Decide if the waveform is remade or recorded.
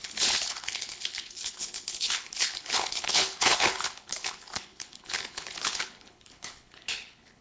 remade